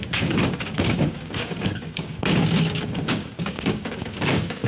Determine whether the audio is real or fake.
fake